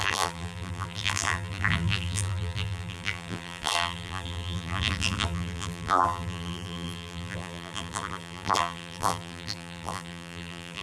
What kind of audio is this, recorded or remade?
remade